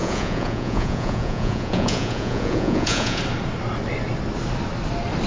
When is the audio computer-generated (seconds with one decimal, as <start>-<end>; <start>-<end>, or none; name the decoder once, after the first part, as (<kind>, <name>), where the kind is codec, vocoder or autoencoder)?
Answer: 0.0-3.2 (vocoder, Vocos)